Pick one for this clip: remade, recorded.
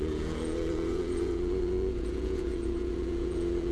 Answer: remade